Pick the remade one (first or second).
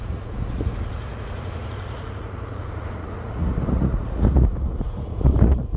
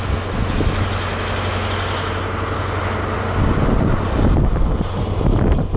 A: first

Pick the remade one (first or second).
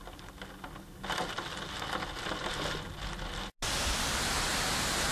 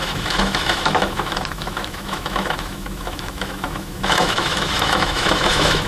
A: second